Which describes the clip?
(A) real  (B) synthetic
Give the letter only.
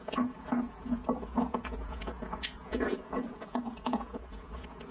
B